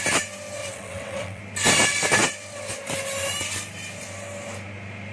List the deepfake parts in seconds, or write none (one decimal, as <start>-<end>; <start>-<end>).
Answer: 0.6-1.4